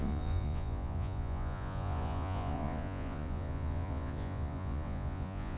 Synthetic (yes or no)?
yes